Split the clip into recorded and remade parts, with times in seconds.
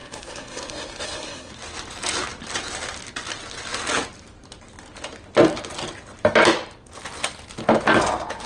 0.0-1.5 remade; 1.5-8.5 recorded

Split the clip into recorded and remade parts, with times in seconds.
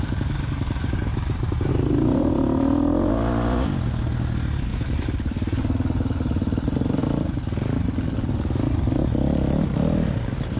0.0-1.1 recorded; 1.1-1.7 remade; 1.7-4.7 recorded; 4.7-5.6 remade; 5.6-10.6 recorded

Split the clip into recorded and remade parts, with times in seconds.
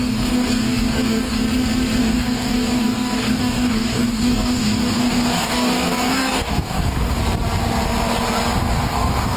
0.0-1.4 remade; 1.4-2.0 recorded; 2.0-7.2 remade; 7.2-8.7 recorded; 8.7-9.4 remade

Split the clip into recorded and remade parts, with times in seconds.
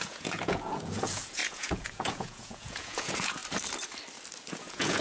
0.0-3.4 remade; 3.4-4.6 recorded; 4.6-5.0 remade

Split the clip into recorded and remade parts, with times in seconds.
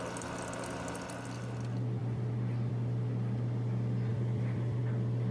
0.0-2.0 recorded; 2.0-2.7 remade; 2.7-4.1 recorded; 4.1-4.8 remade; 4.8-5.3 recorded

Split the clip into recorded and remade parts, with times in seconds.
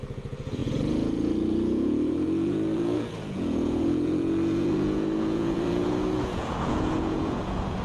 0.0-7.8 remade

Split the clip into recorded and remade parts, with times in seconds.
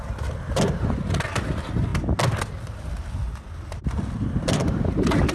0.0-1.9 remade; 1.9-2.4 recorded; 2.4-5.3 remade